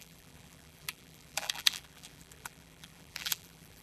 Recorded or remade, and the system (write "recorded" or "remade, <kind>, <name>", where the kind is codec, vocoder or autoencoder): remade, vocoder, BigVGAN v2